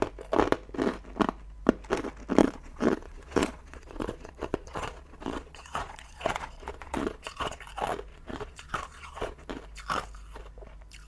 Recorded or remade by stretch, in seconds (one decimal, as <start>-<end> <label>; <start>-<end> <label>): 0.0-2.4 recorded; 2.4-7.6 remade; 7.6-8.1 recorded; 8.1-9.5 remade; 9.5-11.1 recorded